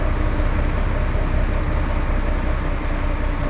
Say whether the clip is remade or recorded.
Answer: recorded